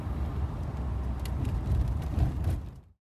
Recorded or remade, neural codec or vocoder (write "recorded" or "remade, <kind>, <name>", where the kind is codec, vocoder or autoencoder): recorded